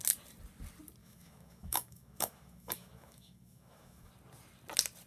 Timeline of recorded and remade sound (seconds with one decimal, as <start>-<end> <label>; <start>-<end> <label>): 0.0-1.0 recorded; 1.0-4.1 remade; 4.1-5.1 recorded